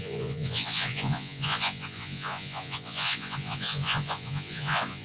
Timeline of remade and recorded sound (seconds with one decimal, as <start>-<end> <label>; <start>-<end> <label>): 0.0-5.0 remade